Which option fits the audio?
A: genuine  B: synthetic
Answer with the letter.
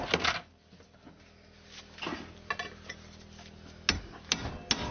A